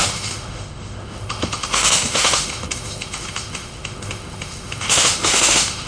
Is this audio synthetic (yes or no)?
yes